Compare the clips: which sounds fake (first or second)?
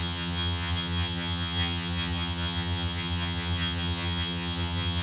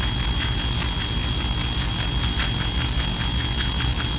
first